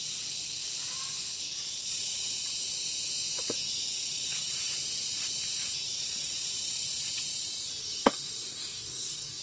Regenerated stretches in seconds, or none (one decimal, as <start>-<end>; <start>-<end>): 7.8-9.4